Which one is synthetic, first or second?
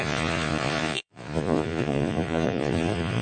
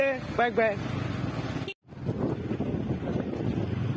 first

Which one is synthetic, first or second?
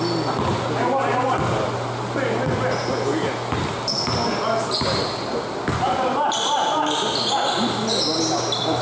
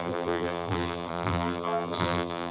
second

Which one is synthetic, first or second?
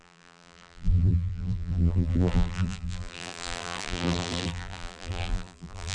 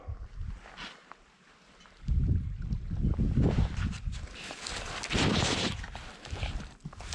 first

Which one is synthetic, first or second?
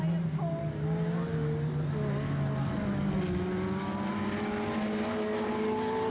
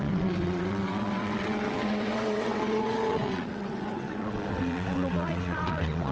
second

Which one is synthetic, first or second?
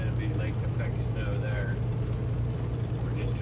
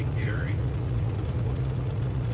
second